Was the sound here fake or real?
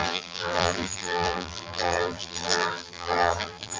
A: fake